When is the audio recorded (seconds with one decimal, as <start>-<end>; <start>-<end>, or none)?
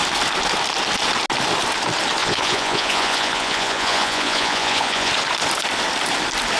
0.0-2.2; 5.1-6.6